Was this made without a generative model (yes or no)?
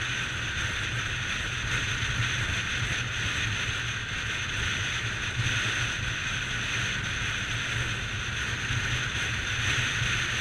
yes